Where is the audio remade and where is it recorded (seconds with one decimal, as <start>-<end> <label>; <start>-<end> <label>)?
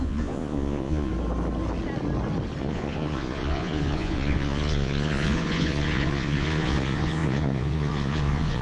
0.0-1.1 remade; 1.1-2.6 recorded; 2.6-8.6 remade